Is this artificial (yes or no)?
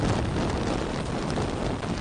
no